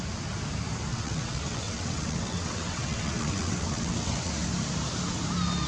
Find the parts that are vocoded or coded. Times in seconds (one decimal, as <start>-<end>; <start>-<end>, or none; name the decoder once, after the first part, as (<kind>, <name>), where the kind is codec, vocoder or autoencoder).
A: 0.9-4.3 (vocoder, WaveNeXt)